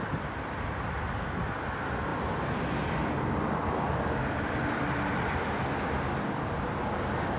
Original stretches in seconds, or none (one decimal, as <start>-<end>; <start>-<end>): 0.0-7.4